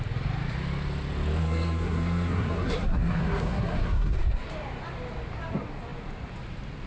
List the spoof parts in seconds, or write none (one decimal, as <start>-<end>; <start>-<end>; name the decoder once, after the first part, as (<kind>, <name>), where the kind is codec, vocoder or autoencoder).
1.4-4.5 (codec, SNAC)